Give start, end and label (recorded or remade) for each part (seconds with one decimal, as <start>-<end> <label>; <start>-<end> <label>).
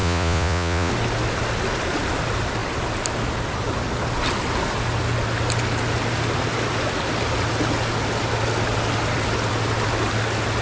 0.0-0.9 remade; 0.9-10.6 recorded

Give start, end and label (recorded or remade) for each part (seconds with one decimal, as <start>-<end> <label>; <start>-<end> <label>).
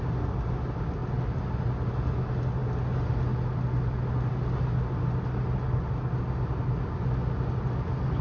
0.0-8.2 recorded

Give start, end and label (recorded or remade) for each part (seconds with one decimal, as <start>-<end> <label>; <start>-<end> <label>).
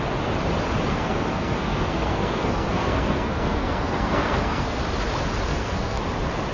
0.0-0.9 recorded; 0.9-4.8 remade; 4.8-5.5 recorded; 5.5-6.0 remade; 6.0-6.5 recorded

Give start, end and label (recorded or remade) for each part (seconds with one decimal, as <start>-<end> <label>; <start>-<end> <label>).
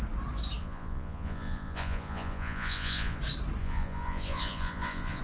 0.0-0.6 recorded; 0.6-3.2 remade; 3.2-3.6 recorded; 3.6-5.2 remade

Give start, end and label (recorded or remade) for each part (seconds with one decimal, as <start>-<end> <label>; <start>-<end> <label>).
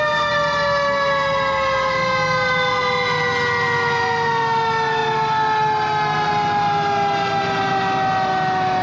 0.0-8.8 recorded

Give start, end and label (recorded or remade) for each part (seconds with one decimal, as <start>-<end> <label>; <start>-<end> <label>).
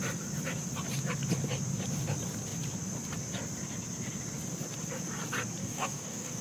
0.0-5.6 recorded; 5.6-6.4 remade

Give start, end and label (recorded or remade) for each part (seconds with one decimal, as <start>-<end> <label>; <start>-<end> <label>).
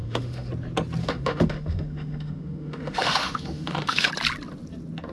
0.0-0.5 remade; 0.5-1.0 recorded; 1.0-4.1 remade; 4.1-5.1 recorded